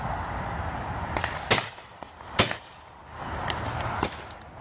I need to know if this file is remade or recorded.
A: recorded